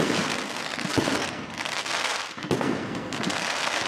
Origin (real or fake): fake